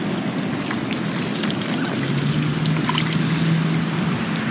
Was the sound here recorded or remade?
recorded